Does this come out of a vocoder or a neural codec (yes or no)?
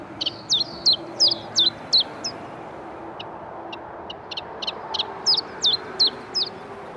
no